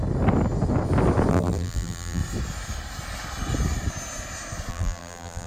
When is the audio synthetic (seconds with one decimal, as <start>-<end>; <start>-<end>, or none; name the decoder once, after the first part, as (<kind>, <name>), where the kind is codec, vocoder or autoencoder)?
1.3-2.2 (vocoder, BigVGAN v2); 4.7-5.5

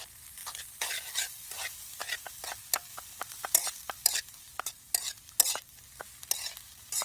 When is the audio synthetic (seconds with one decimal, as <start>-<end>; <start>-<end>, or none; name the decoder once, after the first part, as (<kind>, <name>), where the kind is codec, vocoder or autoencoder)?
none